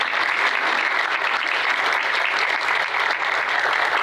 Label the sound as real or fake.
real